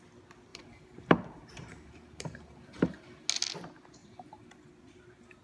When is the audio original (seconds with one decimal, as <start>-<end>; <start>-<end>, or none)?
0.0-0.5; 3.3-4.0; 4.7-5.4